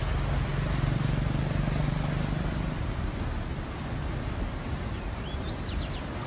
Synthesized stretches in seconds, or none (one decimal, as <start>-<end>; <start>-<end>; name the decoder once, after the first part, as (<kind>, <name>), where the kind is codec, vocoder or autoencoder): none